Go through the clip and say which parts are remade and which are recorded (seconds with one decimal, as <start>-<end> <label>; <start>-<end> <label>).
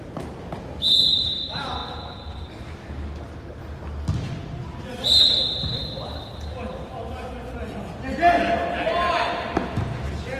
0.0-1.8 recorded; 1.8-2.4 remade; 2.4-10.4 recorded